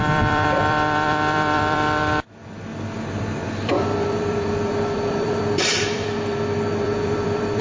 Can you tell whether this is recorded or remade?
remade